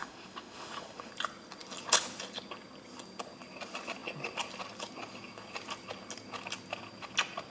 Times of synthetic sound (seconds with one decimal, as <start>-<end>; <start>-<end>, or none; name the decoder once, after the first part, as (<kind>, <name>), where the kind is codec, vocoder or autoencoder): 0.0-1.1 (autoencoder, DAC-VAE)